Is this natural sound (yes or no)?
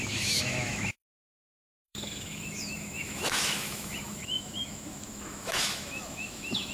no